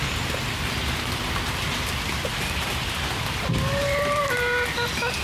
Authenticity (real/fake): real